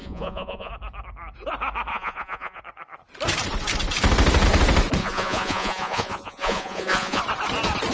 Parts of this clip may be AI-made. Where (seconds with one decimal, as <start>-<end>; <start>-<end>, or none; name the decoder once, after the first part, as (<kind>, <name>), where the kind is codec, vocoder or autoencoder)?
0.0-0.7 (vocoder, Vocos); 1.9-2.6; 5.0-7.2